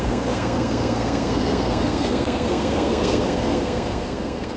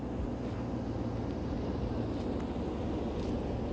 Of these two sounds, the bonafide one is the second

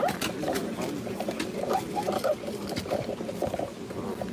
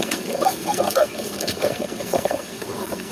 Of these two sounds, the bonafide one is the first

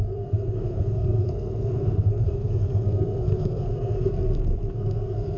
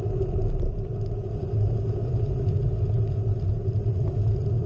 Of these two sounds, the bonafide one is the second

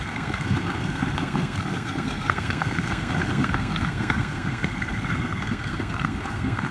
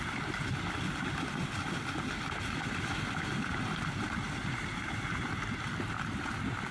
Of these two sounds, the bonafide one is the second